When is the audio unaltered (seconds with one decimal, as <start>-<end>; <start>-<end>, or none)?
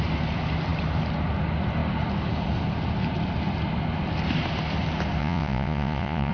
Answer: 0.0-5.2